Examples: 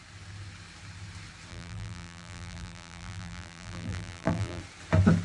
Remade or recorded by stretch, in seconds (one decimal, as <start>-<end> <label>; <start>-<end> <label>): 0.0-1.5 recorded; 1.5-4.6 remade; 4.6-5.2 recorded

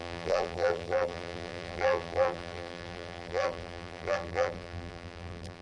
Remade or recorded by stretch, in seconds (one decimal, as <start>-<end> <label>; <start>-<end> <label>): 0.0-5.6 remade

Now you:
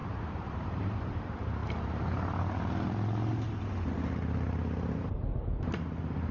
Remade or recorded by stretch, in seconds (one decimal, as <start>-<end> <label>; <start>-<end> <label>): 0.0-1.0 remade; 1.0-6.3 recorded

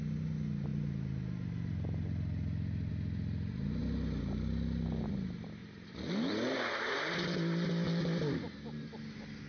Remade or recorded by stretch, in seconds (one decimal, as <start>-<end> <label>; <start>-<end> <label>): 0.0-5.6 recorded; 5.6-7.1 remade; 7.1-9.5 recorded

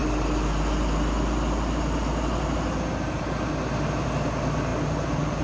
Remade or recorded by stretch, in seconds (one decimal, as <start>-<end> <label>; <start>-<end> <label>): 0.0-5.4 recorded

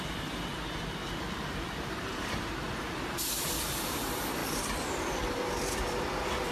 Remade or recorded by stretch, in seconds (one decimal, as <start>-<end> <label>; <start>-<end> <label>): 0.0-0.5 remade; 0.5-1.2 recorded; 1.2-2.1 remade; 2.1-2.8 recorded; 2.8-6.5 remade